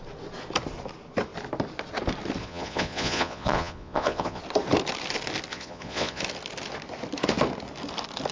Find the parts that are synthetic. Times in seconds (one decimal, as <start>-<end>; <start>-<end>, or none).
2.4-4.4; 5.5-6.2